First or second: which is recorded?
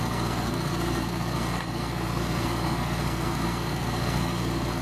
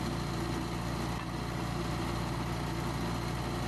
second